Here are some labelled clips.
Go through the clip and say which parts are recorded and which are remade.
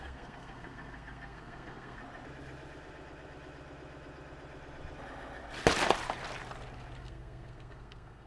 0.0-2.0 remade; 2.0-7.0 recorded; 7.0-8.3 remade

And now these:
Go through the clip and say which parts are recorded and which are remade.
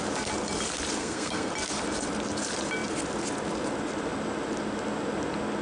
0.0-1.0 recorded; 1.0-1.5 remade; 1.5-5.6 recorded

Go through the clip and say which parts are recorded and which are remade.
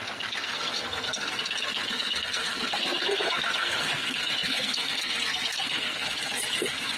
0.0-7.0 remade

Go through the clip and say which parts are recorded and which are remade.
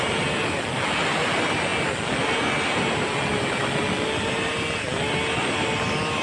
0.0-6.2 recorded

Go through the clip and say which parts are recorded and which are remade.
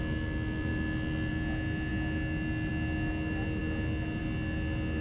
0.0-5.0 recorded